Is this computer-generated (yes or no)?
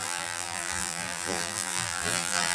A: yes